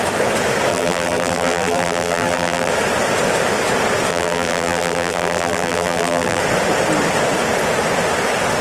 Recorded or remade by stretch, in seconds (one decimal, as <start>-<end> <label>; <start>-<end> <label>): 0.0-0.7 recorded; 0.7-2.7 remade; 2.7-4.1 recorded; 4.1-6.4 remade; 6.4-8.6 recorded